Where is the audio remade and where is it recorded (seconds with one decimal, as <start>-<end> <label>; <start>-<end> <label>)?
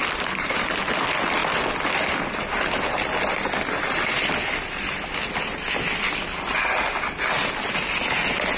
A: 0.0-8.6 recorded